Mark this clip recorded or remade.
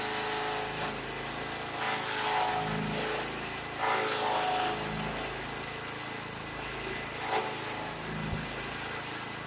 recorded